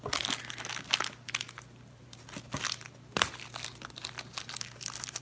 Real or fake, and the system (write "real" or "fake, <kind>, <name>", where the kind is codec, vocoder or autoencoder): real